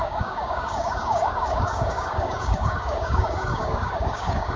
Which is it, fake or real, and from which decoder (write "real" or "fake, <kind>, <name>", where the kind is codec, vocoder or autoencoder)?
fake, codec, DAC